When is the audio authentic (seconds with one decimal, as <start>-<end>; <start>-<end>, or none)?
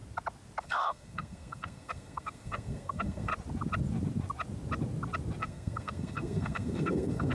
0.0-0.6; 3.3-5.4